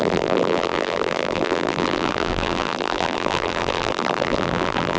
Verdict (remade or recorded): remade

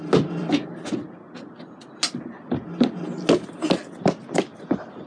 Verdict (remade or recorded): recorded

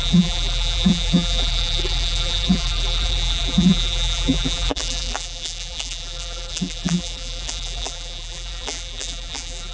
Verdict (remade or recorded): remade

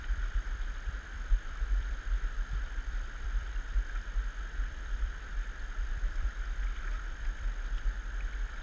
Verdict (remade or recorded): remade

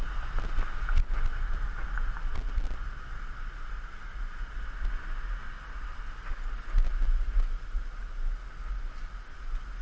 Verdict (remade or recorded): recorded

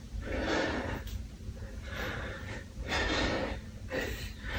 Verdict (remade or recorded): remade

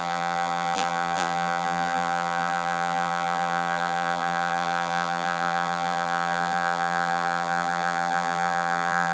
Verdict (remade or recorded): remade